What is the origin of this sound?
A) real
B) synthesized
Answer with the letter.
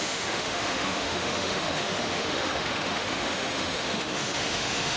B